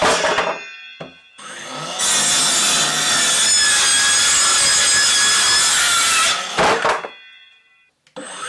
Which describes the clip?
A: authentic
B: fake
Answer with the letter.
A